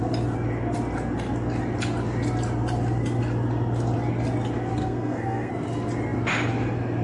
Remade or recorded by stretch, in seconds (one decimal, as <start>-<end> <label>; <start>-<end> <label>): 0.0-4.8 recorded; 4.8-5.5 remade; 5.5-7.0 recorded

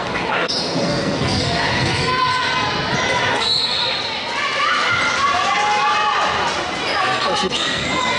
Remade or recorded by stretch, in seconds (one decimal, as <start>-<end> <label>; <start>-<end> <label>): 0.0-2.5 remade; 2.5-3.3 recorded; 3.3-3.8 remade; 3.8-7.0 recorded; 7.0-8.2 remade

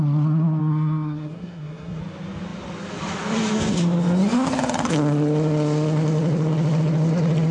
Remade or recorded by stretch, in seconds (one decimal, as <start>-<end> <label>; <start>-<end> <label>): 0.0-0.6 recorded; 0.6-2.0 remade; 2.0-7.5 recorded

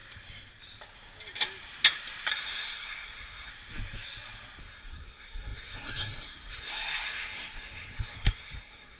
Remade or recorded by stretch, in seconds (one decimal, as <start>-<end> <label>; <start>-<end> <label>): 0.0-2.3 recorded; 2.3-3.5 remade; 3.5-4.6 recorded; 4.6-9.0 remade

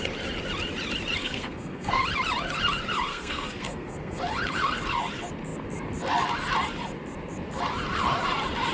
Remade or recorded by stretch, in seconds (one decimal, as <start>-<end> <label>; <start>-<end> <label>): 0.0-1.2 recorded; 1.2-2.0 remade; 2.0-3.1 recorded; 3.1-4.2 remade; 4.2-8.7 recorded